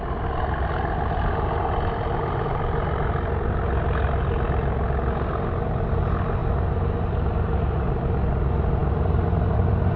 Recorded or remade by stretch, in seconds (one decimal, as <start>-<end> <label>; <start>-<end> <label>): 0.0-10.0 recorded